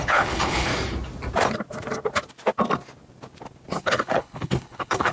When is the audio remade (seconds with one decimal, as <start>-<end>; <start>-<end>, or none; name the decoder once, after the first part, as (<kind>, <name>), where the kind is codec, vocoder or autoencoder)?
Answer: 0.0-0.7 (codec, HILCodec); 3.8-5.1